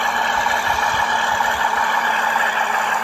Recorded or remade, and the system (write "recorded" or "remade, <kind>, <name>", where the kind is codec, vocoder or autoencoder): recorded